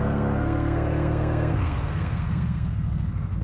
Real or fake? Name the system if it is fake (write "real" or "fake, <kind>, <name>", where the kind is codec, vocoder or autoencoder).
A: fake, codec, SNAC